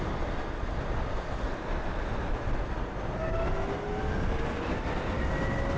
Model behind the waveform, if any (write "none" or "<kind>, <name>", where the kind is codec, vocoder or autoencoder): none